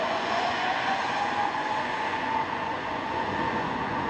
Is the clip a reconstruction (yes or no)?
yes